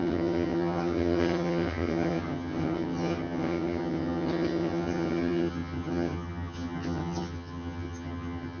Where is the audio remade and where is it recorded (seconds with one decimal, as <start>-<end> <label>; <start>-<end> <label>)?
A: 0.0-8.6 remade